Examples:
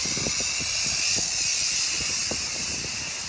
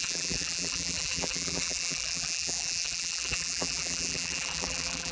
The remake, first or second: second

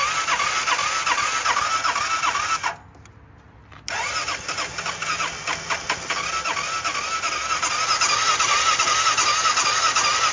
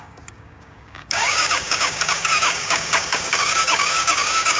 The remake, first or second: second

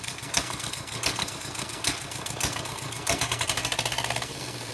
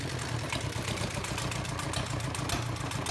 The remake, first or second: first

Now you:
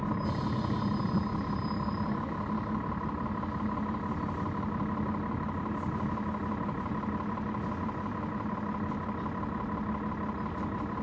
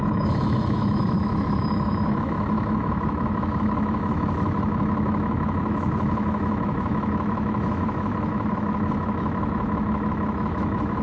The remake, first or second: second